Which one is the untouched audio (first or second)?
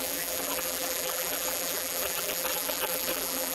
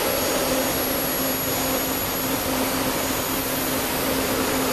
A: second